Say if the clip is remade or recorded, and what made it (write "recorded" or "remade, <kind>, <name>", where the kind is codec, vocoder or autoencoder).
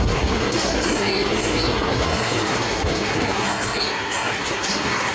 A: remade, codec, SNAC